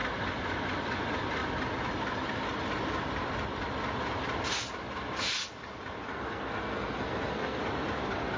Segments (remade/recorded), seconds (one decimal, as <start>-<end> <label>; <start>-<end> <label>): 0.0-6.1 recorded; 6.1-7.6 remade; 7.6-8.4 recorded